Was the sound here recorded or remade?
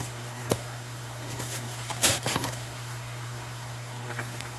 remade